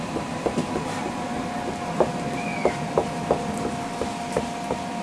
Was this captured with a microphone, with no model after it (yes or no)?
yes